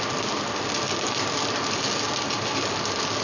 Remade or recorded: recorded